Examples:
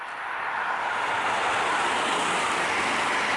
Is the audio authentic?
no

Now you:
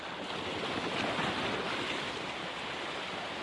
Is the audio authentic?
yes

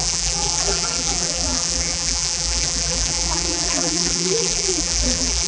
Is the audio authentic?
no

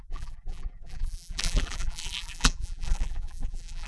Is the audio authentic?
no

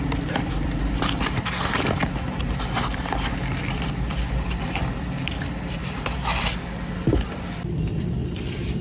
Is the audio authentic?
no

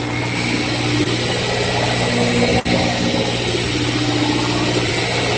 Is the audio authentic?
yes